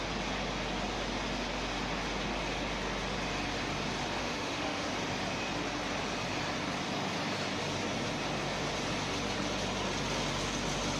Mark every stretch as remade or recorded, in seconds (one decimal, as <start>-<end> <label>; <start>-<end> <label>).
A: 0.0-4.2 recorded; 4.2-4.9 remade; 4.9-11.0 recorded